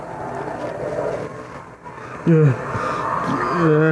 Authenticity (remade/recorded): recorded